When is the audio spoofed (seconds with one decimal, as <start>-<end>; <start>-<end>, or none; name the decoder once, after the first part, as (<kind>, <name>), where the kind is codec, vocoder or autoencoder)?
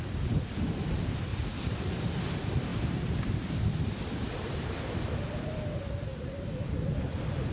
1.3-2.2 (vocoder, BigVGAN v2); 2.7-3.4